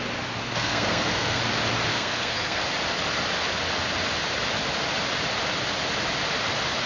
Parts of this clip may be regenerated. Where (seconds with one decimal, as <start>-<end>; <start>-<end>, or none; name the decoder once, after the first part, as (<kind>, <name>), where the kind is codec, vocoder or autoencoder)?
0.4-1.4 (codec, SNAC); 1.9-2.6